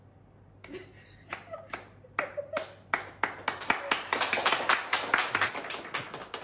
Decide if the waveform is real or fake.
real